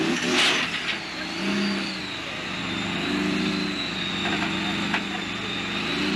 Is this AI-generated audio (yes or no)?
no